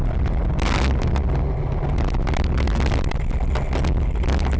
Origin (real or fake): real